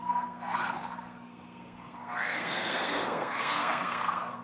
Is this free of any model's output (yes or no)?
no